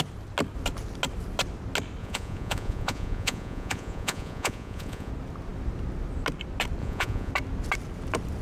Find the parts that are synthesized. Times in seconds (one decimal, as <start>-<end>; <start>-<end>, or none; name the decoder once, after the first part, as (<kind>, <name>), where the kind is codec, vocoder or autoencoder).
2.0-5.1 (vocoder, Vocos); 6.8-7.3